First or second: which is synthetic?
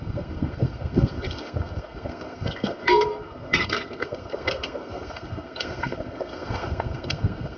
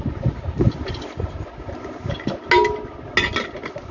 first